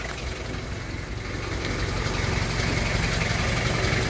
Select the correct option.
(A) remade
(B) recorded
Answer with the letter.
B